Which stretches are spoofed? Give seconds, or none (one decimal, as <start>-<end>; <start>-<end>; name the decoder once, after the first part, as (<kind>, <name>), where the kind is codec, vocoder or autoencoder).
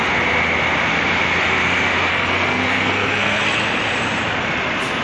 2.1-3.4 (codec, SNAC)